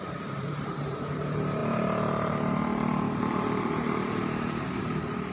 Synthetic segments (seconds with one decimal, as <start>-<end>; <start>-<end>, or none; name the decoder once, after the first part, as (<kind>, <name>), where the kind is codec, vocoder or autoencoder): 0.0-5.3 (vocoder, BigVGAN v2)